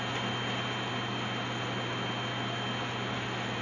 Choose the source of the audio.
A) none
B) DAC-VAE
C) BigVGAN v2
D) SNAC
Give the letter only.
A